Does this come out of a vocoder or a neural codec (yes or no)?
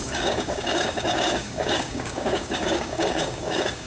yes